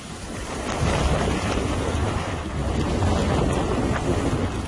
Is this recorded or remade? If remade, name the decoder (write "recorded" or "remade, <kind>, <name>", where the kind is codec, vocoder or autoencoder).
recorded